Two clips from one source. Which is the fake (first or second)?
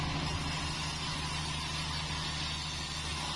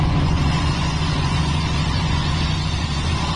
second